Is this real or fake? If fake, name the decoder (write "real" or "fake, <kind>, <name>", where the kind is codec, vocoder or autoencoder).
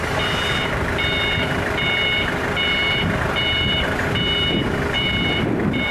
fake, vocoder, BigVGAN v2